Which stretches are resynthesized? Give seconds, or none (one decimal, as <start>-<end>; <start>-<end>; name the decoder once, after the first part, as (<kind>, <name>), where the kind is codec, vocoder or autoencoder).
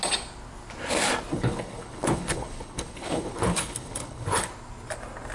1.3-4.5 (codec, HILCodec)